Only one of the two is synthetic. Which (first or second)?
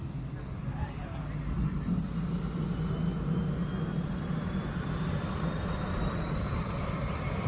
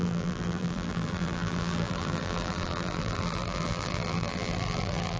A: second